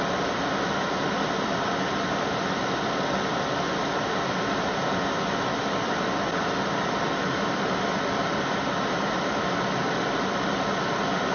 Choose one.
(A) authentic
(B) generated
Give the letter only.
A